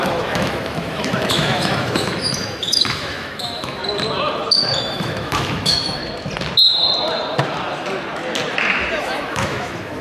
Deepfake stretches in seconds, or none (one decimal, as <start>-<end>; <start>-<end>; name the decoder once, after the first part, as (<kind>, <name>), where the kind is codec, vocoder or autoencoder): 0.0-3.8 (autoencoder, DAC-VAE); 4.8-6.0; 9.0-10.0